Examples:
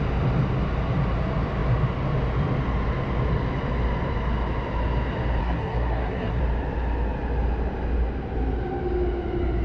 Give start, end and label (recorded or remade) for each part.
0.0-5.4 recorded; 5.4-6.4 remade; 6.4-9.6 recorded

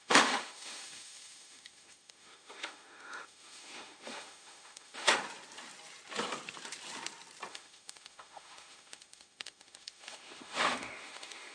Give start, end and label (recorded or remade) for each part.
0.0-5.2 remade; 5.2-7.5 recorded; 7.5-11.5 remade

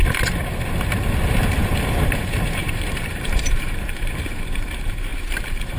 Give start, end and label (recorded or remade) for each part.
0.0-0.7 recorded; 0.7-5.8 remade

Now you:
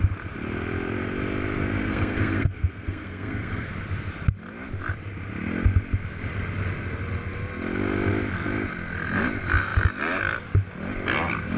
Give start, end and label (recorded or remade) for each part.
0.0-1.8 recorded; 1.8-3.7 remade; 3.7-11.6 recorded